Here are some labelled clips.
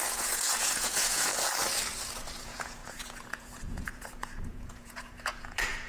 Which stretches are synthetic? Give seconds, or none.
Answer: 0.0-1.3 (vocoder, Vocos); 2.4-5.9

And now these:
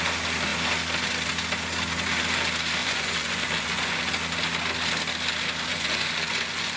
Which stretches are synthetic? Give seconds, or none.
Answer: 2.8-4.1 (vocoder, Vocos); 5.7-6.8

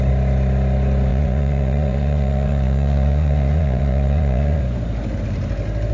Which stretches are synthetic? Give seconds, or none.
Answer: 1.1-4.6 (vocoder, Vocos)

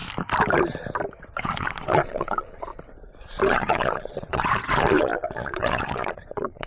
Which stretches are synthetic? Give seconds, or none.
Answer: 1.4-2.7 (vocoder, Vocos); 3.4-6.7